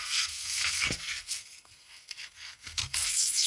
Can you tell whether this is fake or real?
fake